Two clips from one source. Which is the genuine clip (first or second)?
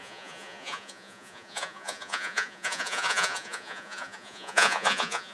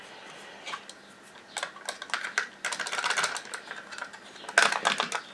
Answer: second